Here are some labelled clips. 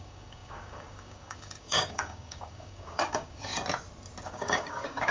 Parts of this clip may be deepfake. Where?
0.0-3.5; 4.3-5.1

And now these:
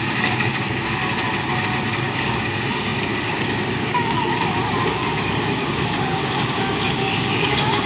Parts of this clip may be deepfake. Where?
0.0-1.0; 1.9-7.9